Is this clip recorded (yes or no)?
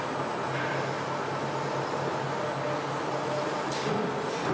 yes